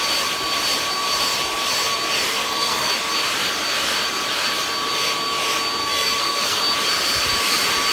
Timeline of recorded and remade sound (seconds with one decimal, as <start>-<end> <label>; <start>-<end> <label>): 0.0-2.3 recorded; 2.3-2.9 remade; 2.9-5.8 recorded; 5.8-6.6 remade; 6.6-7.9 recorded